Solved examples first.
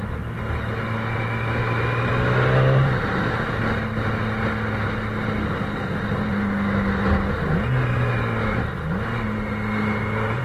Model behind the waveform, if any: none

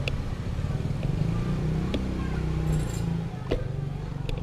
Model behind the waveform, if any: none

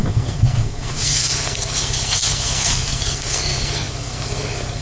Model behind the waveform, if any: codec, SNAC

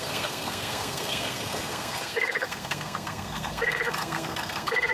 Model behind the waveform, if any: codec, SNAC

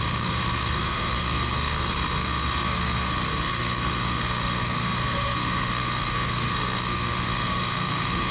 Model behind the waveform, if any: codec, SNAC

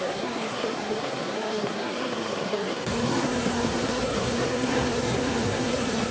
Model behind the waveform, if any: codec, SNAC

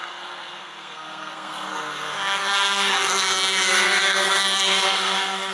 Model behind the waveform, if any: codec, SNAC